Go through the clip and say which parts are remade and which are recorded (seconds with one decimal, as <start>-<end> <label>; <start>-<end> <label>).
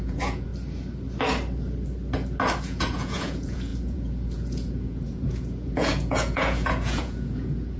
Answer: 0.0-0.5 remade; 0.5-2.6 recorded; 2.6-7.8 remade